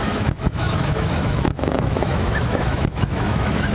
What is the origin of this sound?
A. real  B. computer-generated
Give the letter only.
B